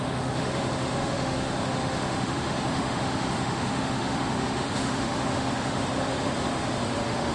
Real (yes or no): no